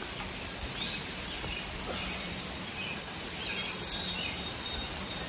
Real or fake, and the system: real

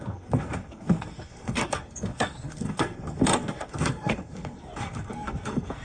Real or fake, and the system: fake, codec, SNAC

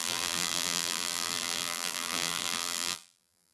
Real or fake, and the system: fake, vocoder, BigVGAN v2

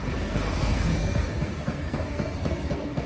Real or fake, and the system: fake, codec, SNAC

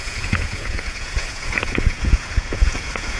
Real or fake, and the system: fake, vocoder, Vocos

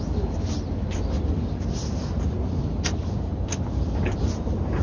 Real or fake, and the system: real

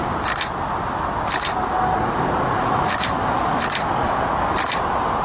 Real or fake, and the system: real